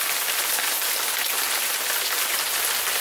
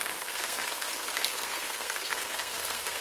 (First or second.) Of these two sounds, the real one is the first